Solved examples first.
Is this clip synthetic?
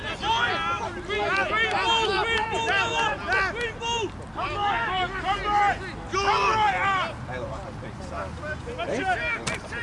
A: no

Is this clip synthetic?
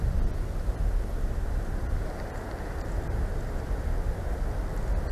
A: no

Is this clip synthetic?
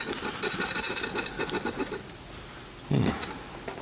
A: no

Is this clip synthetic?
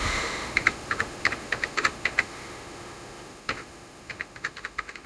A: yes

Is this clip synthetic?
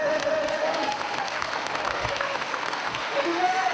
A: yes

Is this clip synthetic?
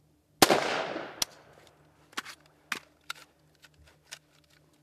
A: no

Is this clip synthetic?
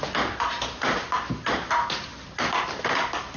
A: no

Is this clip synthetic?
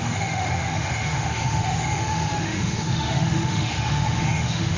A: yes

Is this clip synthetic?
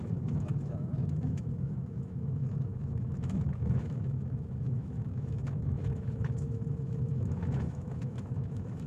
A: yes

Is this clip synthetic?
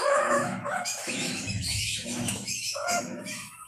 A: yes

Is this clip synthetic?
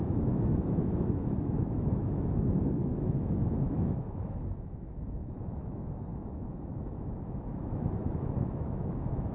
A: yes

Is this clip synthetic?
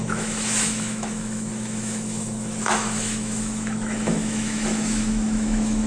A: yes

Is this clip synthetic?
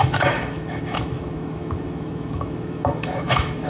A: yes